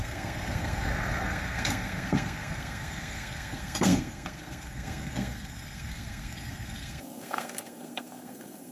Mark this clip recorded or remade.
remade